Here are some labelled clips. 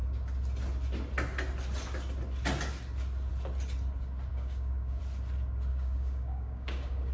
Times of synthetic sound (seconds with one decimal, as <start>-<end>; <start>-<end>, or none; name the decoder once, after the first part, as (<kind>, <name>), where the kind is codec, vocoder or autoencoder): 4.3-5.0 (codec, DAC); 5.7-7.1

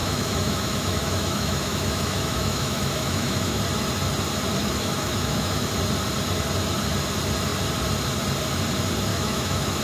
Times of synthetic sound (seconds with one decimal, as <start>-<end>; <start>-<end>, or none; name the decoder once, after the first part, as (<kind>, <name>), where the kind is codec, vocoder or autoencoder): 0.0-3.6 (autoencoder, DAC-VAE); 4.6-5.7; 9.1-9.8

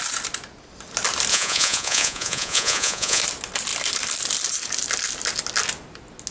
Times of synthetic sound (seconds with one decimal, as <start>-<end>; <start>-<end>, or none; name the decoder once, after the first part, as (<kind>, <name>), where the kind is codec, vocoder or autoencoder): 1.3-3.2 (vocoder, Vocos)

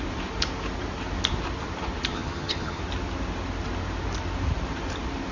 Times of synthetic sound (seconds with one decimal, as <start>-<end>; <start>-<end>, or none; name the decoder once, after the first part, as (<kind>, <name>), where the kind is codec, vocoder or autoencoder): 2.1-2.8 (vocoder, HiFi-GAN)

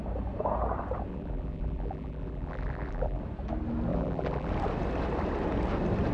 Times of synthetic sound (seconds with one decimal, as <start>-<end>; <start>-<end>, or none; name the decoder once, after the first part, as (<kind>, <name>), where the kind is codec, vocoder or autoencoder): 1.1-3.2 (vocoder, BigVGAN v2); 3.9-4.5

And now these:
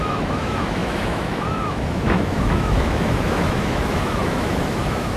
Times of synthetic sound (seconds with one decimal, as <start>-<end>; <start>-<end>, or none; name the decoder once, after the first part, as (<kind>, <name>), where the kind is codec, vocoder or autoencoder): 0.0-5.2 (autoencoder, DAC-VAE)